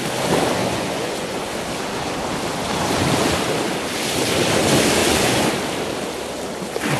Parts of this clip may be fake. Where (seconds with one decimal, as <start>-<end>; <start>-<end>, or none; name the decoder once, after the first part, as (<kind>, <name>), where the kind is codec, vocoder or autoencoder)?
0.6-1.5 (vocoder, Vocos); 5.0-5.5